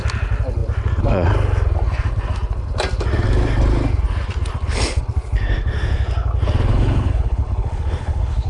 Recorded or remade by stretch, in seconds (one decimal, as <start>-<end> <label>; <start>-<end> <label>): 0.0-6.7 recorded; 6.7-8.5 remade